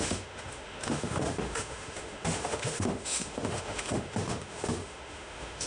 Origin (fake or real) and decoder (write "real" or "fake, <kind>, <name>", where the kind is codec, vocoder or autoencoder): fake, autoencoder, DAC-VAE